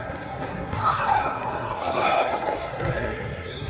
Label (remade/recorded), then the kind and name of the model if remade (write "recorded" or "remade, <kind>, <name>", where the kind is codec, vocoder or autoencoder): remade, codec, SNAC